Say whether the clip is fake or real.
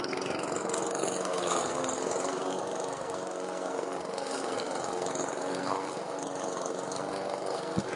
fake